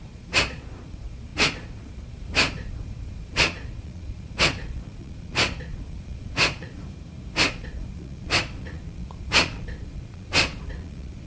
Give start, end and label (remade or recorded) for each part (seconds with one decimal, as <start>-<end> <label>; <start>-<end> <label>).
0.0-6.8 remade; 6.8-7.5 recorded; 7.5-11.3 remade